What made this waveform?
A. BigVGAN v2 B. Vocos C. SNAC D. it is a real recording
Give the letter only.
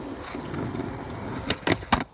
D